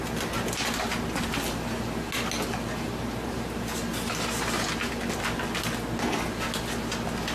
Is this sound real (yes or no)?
yes